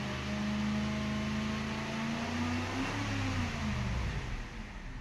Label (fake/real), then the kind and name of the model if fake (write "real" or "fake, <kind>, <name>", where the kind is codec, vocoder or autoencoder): real